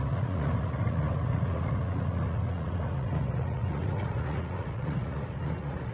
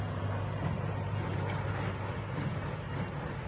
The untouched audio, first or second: second